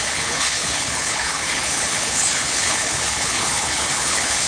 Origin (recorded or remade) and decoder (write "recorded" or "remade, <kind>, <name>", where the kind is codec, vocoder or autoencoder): remade, codec, HILCodec